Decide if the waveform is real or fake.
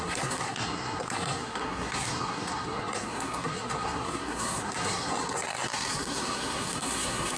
fake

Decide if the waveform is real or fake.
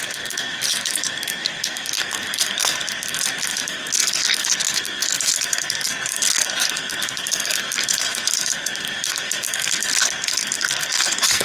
fake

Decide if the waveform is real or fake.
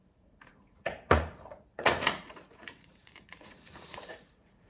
fake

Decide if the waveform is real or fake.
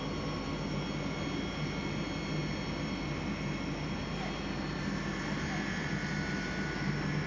real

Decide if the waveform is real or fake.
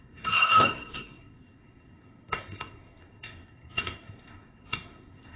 fake